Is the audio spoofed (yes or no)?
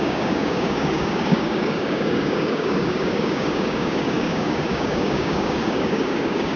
yes